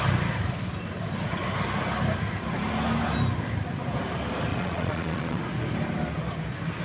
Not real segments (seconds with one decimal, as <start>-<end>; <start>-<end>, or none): 4.5-5.4